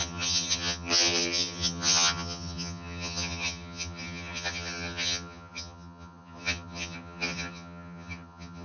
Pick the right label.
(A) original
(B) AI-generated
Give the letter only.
B